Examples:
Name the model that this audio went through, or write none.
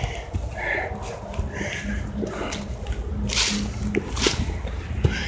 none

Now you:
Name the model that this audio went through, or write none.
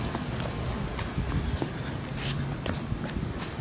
none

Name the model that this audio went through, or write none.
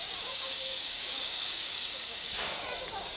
codec, DAC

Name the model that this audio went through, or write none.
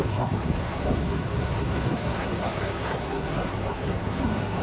codec, SNAC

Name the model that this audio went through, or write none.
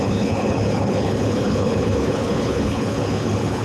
codec, HILCodec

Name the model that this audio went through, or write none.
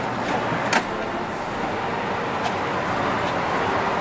none